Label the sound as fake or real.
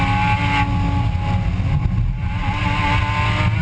real